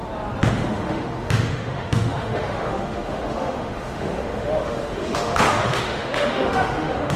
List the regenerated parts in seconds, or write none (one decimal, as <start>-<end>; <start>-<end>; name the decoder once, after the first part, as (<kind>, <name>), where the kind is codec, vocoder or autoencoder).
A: 0.5-7.2 (autoencoder, DAC-VAE)